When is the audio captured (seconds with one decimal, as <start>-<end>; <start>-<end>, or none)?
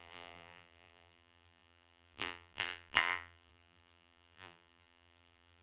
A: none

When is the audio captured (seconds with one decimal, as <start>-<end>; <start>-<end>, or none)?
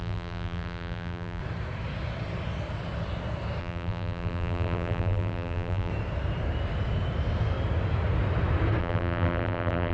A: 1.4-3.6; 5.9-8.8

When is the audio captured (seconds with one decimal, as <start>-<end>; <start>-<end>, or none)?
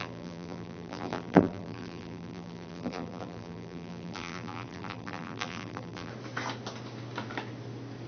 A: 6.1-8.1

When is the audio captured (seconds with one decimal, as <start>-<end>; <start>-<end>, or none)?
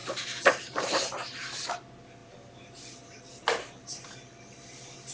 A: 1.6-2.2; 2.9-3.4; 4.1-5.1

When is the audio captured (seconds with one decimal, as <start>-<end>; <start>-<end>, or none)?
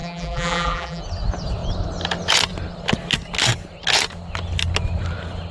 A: 1.0-5.5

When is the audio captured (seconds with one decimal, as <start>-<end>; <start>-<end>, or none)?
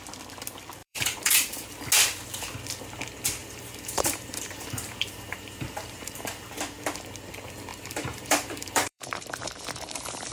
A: 0.0-0.8; 1.8-3.4; 6.5-7.7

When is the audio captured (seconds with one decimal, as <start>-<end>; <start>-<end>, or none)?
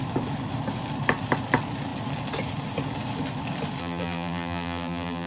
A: 0.0-3.8